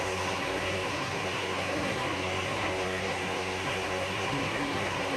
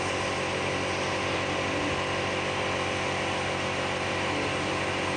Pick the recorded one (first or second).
second